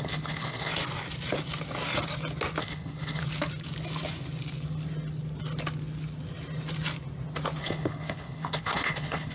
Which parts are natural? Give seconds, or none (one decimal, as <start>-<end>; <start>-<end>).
0.7-2.6; 3.2-7.6